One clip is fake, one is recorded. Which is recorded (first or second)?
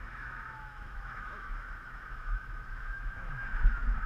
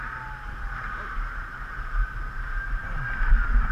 second